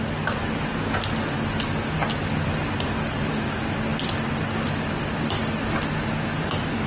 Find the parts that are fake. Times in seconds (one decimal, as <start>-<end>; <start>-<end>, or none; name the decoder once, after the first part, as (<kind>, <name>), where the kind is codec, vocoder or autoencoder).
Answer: none

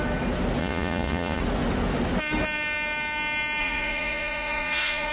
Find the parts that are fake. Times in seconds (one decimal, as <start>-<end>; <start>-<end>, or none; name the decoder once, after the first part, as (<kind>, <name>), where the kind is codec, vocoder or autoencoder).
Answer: 0.6-1.4 (vocoder, Vocos); 3.6-5.1